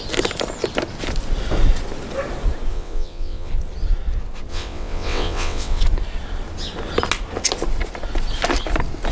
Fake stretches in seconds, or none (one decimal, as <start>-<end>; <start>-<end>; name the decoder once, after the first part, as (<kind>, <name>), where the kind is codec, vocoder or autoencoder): 2.7-3.5 (vocoder, WaveNeXt); 4.5-5.8